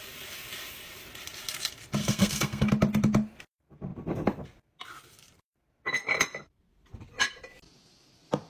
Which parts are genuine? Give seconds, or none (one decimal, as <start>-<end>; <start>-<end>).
0.0-2.0; 2.7-8.5